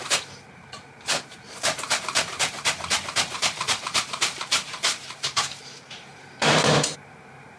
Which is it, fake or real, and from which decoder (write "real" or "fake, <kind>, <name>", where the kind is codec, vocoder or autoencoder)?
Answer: fake, vocoder, BigVGAN v2